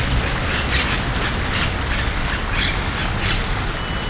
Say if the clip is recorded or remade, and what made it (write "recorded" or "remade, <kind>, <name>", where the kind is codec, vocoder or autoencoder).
recorded